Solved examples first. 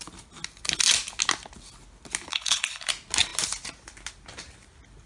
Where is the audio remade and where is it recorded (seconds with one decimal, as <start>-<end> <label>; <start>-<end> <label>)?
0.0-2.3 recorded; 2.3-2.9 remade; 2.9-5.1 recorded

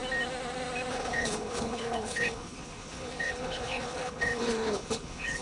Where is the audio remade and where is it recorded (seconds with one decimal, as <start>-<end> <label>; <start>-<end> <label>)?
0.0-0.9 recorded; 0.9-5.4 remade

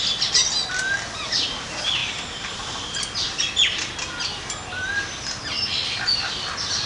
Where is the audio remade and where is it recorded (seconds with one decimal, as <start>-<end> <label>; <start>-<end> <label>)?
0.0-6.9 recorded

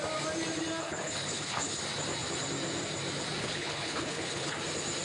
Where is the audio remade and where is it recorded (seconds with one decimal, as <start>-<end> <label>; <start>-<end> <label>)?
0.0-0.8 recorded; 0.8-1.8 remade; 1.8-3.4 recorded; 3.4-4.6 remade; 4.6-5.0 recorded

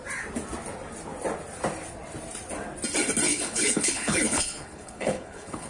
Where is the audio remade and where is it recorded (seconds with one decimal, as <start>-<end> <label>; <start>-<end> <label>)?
0.0-3.3 recorded; 3.3-5.7 remade